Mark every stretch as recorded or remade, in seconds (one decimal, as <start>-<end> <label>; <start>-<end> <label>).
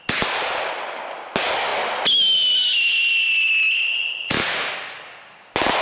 0.0-5.8 recorded